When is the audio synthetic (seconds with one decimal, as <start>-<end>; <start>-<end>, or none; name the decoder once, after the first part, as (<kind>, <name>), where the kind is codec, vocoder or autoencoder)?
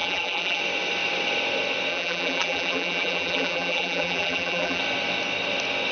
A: 0.0-0.6 (vocoder, BigVGAN v2); 1.9-4.8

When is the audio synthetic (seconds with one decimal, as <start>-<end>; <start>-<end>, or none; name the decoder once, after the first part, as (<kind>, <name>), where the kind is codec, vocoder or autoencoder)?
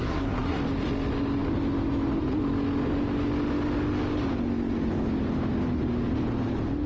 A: 0.0-0.6 (codec, SNAC)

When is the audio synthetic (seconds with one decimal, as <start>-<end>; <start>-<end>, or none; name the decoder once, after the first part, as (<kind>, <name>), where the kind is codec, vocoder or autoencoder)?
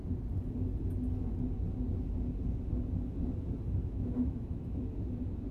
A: 3.8-4.6 (autoencoder, DAC-VAE)